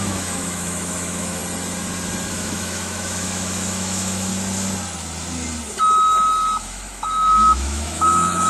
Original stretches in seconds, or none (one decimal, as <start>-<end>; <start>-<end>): 1.4-2.3; 4.3-6.6